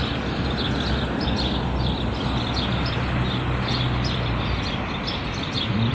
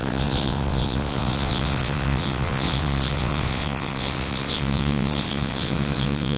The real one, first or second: first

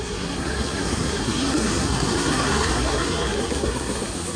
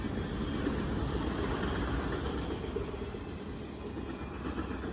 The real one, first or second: second